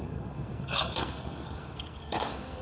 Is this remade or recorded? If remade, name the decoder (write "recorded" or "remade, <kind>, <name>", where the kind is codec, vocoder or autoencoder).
remade, codec, SNAC